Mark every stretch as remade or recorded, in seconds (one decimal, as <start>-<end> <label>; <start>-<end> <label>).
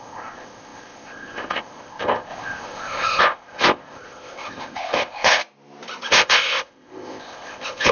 0.0-5.4 remade; 5.4-6.1 recorded; 6.1-7.9 remade